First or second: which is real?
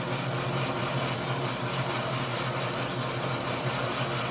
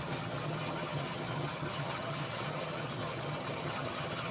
first